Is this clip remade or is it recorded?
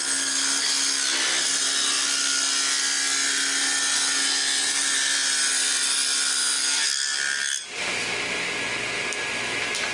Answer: recorded